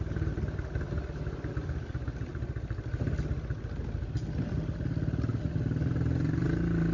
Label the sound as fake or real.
real